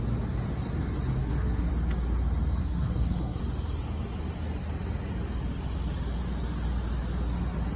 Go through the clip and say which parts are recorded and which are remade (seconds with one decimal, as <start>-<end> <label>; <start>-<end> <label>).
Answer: 0.0-1.2 recorded; 1.2-1.7 remade; 1.7-2.6 recorded; 2.6-3.4 remade; 3.4-7.8 recorded